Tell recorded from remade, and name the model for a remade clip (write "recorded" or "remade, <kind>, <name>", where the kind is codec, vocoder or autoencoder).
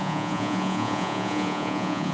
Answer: remade, vocoder, Vocos